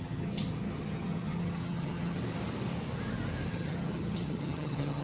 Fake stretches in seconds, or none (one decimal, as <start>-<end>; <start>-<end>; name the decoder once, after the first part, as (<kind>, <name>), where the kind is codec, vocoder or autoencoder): 0.0-2.2 (vocoder, HiFi-GAN); 3.5-5.0